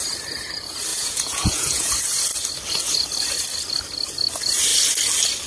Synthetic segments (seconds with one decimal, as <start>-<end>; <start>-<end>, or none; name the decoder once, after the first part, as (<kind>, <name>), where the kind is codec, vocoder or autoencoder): 0.9-1.9 (vocoder, Vocos)

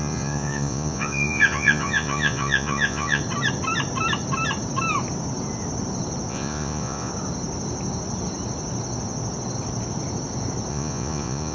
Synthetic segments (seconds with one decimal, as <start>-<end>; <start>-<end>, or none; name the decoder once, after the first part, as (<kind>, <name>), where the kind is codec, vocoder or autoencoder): 0.0-3.2 (vocoder, Vocos); 6.3-7.1; 10.7-11.5

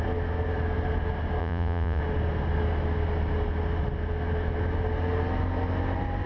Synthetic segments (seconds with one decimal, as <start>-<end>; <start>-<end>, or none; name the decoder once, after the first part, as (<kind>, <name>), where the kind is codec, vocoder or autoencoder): 1.4-2.0 (vocoder, Vocos)

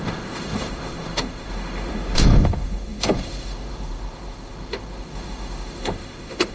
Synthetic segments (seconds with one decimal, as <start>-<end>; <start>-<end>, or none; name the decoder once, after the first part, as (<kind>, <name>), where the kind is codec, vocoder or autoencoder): 0.0-6.5 (autoencoder, DAC-VAE)

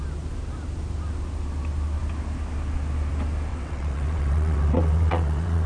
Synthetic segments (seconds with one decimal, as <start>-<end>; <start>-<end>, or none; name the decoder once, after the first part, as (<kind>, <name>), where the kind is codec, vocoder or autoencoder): 3.5-5.7 (vocoder, WaveNeXt)

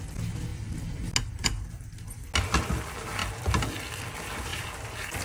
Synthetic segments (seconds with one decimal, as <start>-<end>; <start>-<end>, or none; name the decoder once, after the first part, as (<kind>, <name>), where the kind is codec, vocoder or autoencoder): 3.2-3.7 (vocoder, BigVGAN v2); 4.5-5.2